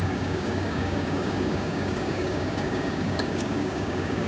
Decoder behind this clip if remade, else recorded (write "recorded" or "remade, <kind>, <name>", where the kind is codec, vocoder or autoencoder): remade, codec, DAC